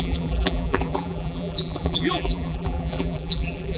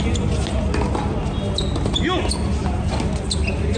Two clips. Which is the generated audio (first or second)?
first